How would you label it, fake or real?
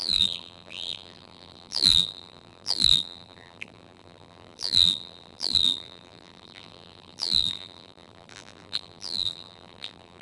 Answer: fake